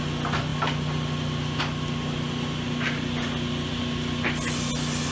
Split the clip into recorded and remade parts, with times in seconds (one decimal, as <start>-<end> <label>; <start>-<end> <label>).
0.0-5.1 recorded